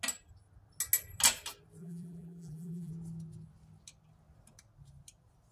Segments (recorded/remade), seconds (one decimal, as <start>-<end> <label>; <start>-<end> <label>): 0.0-1.8 recorded; 1.8-2.9 remade; 2.9-5.5 recorded

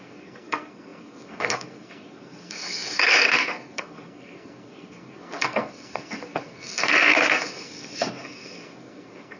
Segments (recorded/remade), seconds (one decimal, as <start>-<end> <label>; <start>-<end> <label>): 0.0-9.4 remade

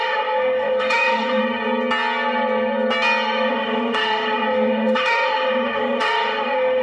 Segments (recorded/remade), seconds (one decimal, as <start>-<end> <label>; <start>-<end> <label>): 0.0-1.4 remade; 1.4-3.5 recorded; 3.5-6.8 remade